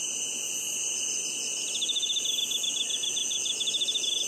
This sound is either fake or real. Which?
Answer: real